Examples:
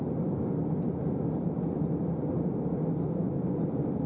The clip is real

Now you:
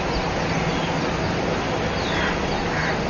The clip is real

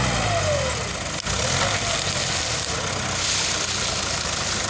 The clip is real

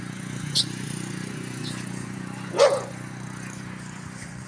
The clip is fake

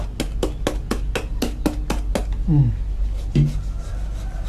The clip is real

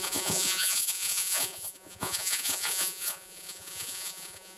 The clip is fake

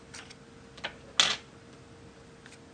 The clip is real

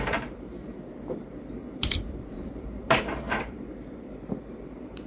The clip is fake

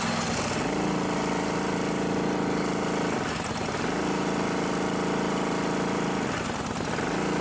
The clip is real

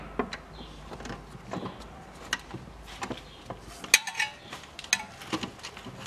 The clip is real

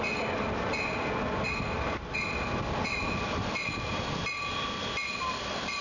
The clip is real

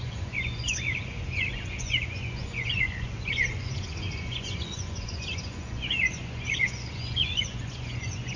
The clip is fake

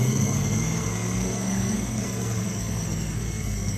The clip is fake